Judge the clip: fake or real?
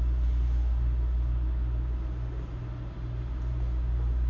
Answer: real